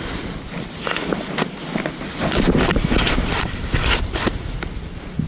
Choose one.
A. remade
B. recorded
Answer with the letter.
B